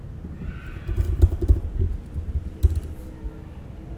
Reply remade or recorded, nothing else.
recorded